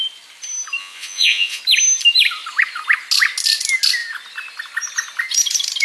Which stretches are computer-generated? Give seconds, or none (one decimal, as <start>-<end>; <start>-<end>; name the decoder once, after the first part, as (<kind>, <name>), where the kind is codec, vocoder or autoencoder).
0.8-1.6 (vocoder, Vocos)